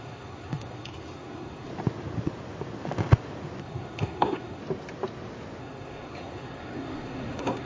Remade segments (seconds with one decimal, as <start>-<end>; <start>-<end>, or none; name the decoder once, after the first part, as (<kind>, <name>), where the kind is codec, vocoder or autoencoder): 0.0-1.7 (codec, SNAC); 3.6-4.6; 5.6-7.7